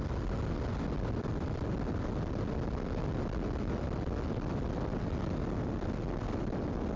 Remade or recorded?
recorded